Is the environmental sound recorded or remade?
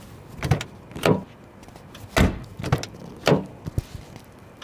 recorded